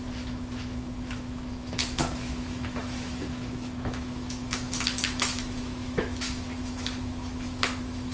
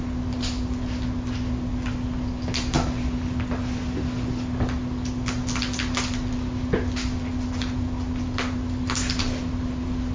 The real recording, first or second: second